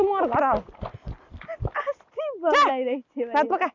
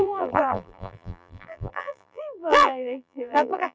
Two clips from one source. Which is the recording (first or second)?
first